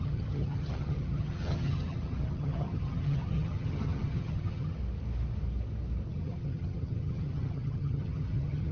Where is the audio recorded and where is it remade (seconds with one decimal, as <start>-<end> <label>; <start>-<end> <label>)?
0.0-4.8 remade; 4.8-6.1 recorded; 6.1-8.7 remade